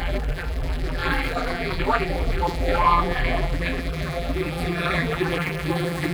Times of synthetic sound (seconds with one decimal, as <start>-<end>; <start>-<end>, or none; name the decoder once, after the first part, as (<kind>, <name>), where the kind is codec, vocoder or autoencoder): 0.0-6.1 (vocoder, BigVGAN v2)